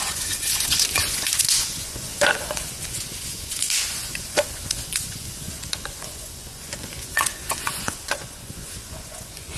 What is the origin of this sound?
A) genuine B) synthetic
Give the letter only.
B